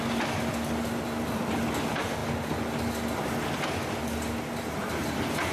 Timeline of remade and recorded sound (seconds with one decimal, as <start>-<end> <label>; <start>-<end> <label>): 0.0-5.5 recorded